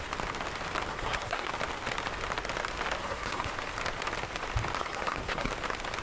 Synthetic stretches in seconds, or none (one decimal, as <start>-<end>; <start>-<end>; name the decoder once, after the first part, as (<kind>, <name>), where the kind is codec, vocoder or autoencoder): 0.9-1.5 (codec, SNAC); 3.0-3.5; 4.8-5.5